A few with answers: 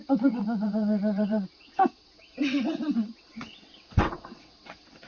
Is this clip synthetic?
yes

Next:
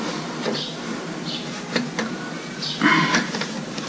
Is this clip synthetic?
no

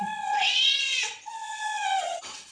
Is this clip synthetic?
yes